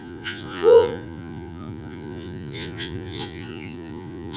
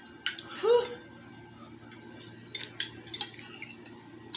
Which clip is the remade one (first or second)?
first